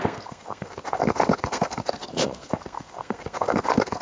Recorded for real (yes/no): no